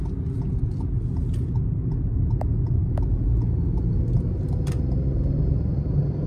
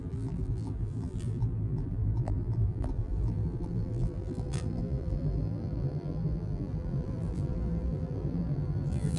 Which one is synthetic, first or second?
second